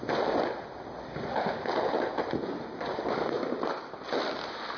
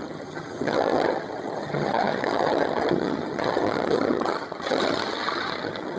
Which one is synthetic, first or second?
second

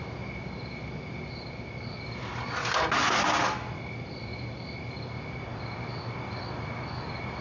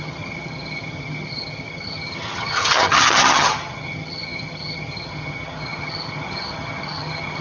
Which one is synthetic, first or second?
second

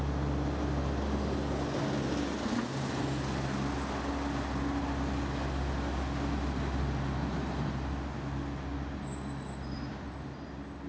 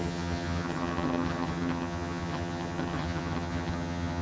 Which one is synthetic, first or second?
second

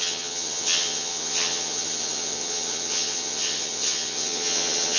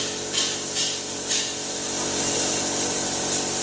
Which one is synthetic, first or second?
first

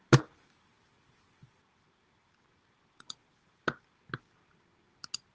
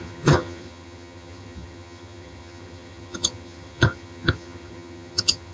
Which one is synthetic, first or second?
second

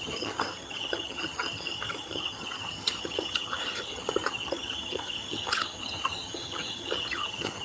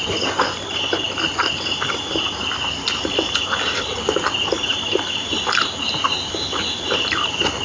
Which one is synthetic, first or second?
first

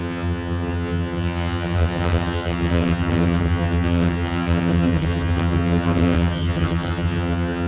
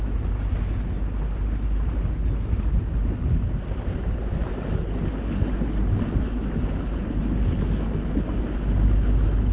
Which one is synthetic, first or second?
first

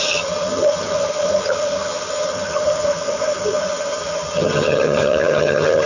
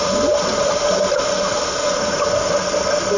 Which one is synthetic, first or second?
first